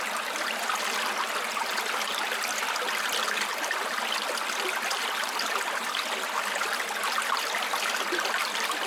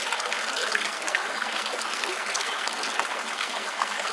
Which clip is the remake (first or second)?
second